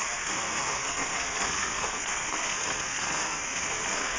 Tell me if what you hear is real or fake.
fake